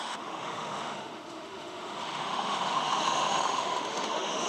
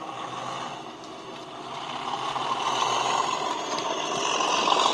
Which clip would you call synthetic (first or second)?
first